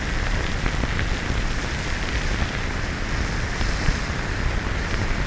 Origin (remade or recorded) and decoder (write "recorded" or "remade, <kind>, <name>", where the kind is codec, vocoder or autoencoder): recorded